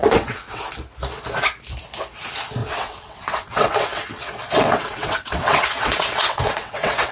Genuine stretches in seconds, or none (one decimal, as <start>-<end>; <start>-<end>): 0.6-2.6